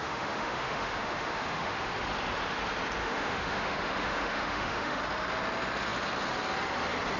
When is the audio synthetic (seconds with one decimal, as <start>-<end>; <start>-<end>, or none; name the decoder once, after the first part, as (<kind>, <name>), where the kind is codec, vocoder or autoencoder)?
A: 0.0-1.9 (autoencoder, DAC-VAE); 3.0-5.0